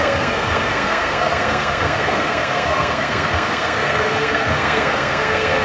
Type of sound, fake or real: fake